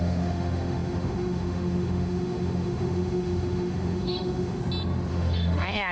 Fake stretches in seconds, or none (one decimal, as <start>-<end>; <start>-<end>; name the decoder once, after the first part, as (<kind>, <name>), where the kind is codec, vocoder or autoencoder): 0.0-4.6 (autoencoder, DAC-VAE); 5.1-5.9